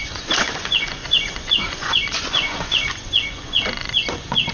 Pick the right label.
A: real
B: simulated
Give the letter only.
B